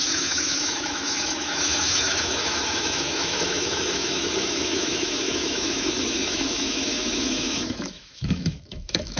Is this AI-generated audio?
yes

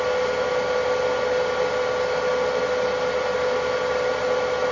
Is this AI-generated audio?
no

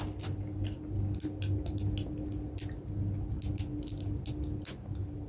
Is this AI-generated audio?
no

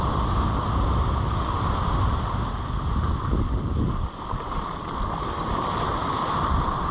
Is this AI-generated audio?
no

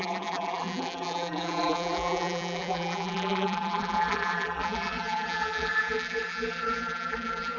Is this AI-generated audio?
yes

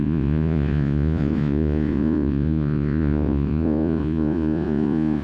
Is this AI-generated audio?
yes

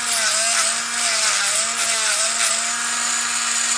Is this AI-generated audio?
no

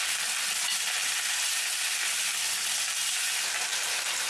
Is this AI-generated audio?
no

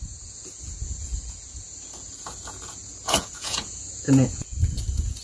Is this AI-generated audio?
yes